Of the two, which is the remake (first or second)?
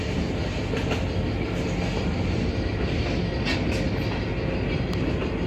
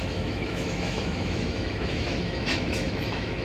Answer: second